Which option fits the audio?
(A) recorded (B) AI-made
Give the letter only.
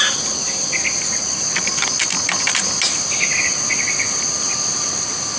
A